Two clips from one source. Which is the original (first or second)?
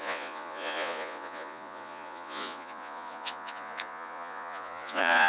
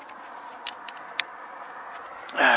second